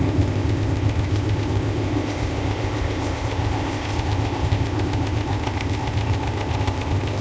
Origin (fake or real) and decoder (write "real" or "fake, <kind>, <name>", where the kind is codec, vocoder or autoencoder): fake, codec, ZipCodec